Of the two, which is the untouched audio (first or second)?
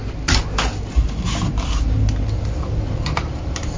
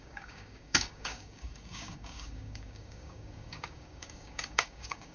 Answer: first